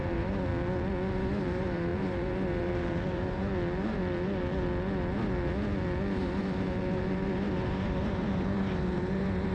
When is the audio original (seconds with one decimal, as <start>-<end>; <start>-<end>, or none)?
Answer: 0.5-1.1; 3.4-6.2